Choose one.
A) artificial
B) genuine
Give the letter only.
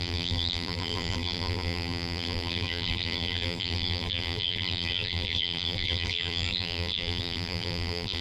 A